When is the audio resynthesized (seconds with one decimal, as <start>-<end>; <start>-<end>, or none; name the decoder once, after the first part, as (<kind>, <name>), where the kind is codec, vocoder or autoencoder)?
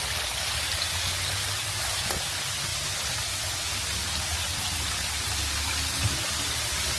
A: none